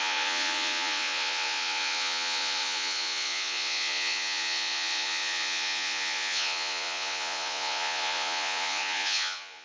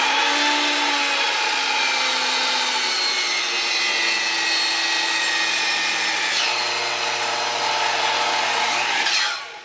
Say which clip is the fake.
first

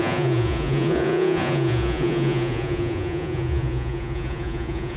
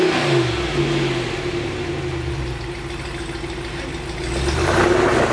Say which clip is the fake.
first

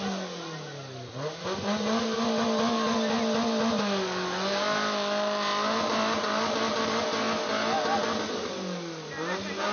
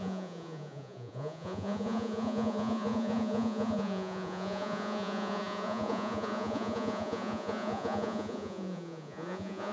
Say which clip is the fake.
second